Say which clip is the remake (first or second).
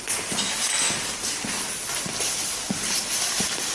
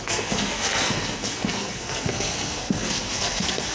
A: second